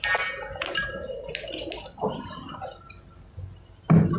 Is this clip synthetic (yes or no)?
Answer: no